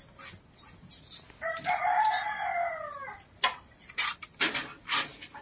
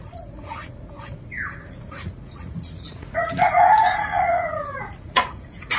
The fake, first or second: second